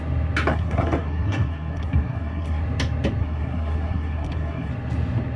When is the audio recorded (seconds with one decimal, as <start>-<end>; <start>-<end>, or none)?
0.0-0.5; 2.6-3.2; 4.7-5.4